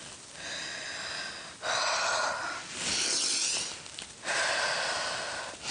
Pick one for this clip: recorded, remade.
recorded